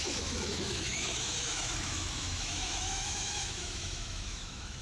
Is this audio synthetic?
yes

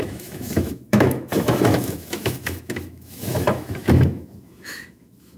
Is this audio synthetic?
yes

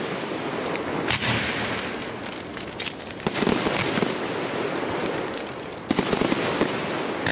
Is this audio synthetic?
no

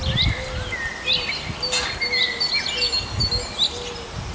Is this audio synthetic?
no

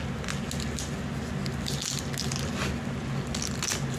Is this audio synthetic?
no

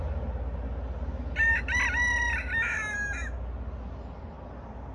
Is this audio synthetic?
no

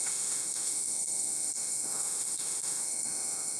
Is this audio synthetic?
yes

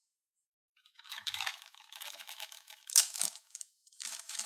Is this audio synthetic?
yes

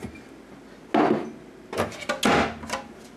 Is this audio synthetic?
no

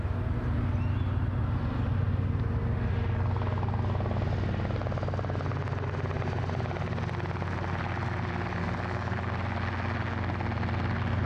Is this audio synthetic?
no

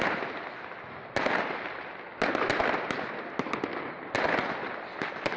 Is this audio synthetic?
no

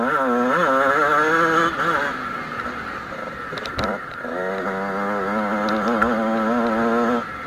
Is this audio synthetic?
no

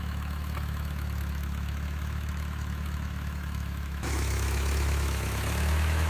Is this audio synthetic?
yes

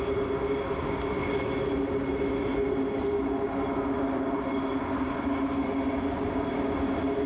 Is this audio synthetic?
no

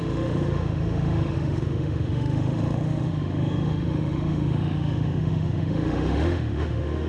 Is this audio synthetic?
yes